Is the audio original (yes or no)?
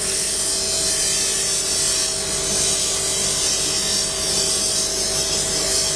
yes